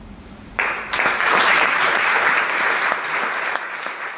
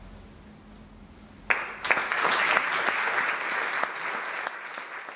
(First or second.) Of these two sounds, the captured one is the second